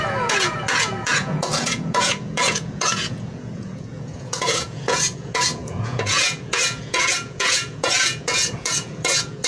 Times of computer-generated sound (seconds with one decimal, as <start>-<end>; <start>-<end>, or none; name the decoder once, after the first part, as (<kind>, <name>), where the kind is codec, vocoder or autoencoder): 0.0-9.5 (vocoder, Vocos)